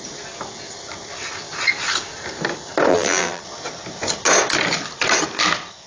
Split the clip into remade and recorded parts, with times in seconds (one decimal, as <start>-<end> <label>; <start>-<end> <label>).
0.0-2.9 recorded; 2.9-3.4 remade; 3.4-5.9 recorded